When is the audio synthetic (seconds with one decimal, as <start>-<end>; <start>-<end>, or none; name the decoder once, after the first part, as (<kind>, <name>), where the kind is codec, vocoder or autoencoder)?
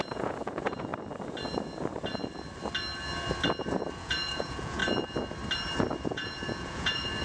0.0-0.9 (vocoder, Vocos); 3.9-4.8; 6.0-7.2